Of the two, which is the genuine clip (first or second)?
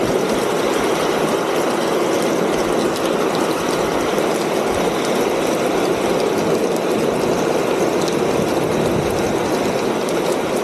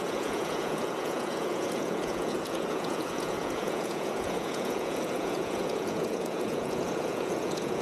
first